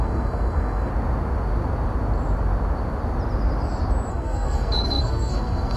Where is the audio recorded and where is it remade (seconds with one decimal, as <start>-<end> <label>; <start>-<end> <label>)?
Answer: 0.0-0.9 remade; 0.9-4.1 recorded; 4.1-5.8 remade